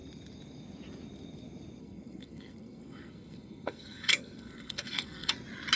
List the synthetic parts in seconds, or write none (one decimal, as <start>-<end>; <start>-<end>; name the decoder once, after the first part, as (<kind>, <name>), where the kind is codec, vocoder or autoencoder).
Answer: 1.8-5.3 (codec, SNAC)